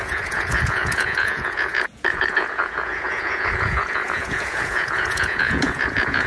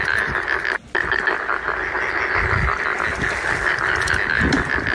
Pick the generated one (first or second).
first